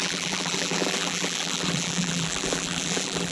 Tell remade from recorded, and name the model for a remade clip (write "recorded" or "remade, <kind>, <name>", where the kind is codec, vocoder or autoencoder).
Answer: remade, vocoder, BigVGAN v2